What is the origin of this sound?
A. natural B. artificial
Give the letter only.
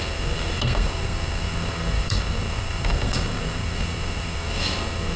B